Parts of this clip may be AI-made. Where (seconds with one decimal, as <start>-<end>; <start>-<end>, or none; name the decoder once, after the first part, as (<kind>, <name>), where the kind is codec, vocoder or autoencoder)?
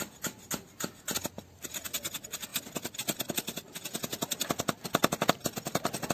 none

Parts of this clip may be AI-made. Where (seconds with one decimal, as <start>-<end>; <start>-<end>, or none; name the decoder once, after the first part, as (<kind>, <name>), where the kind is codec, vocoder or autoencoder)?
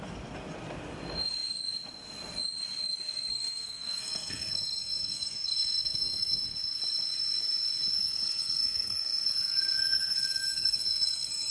3.3-6.8 (codec, SNAC); 8.0-11.5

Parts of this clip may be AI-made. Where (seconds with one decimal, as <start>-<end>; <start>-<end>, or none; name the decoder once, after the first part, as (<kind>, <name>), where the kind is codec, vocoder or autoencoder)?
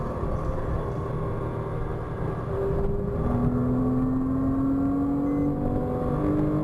none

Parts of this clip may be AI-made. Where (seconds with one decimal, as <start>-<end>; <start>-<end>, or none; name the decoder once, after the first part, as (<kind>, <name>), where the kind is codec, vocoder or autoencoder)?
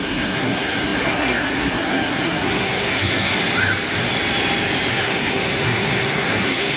0.0-3.4 (codec, SNAC); 4.9-6.8